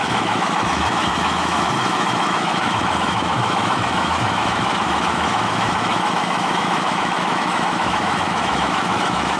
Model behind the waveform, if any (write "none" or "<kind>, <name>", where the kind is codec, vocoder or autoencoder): autoencoder, DAC-VAE